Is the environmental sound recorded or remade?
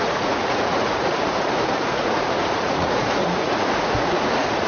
remade